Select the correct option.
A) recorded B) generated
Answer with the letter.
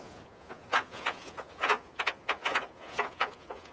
B